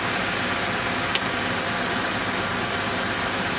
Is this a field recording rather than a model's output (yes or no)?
yes